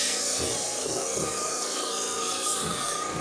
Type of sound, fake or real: fake